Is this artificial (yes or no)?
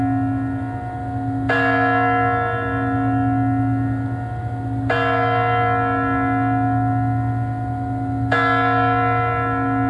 no